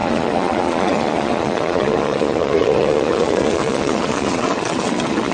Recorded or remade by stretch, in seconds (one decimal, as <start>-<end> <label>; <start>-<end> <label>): 0.0-5.3 remade